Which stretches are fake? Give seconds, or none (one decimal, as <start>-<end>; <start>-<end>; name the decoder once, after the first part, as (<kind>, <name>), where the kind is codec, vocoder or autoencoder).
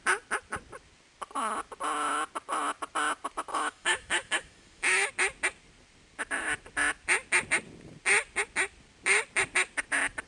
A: 3.5-5.1 (autoencoder, DAC-VAE)